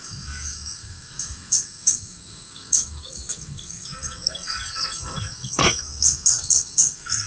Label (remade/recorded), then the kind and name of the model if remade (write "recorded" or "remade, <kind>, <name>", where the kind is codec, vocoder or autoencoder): remade, codec, SNAC